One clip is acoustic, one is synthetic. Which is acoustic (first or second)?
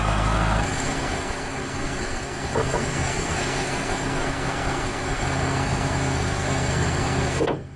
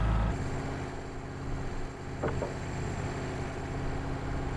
second